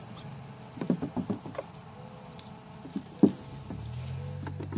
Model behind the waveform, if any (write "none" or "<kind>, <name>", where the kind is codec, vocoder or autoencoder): none